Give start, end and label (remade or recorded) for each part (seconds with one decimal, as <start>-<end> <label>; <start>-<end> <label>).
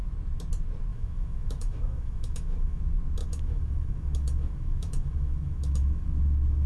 0.0-0.9 recorded; 0.9-2.8 remade; 2.8-3.2 recorded; 3.2-6.7 remade